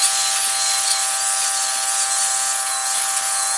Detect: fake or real real